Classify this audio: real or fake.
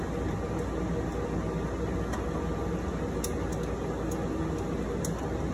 real